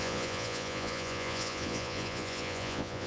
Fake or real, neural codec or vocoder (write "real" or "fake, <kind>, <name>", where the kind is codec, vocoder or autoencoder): fake, vocoder, Vocos